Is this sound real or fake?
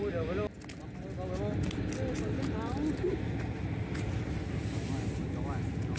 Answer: real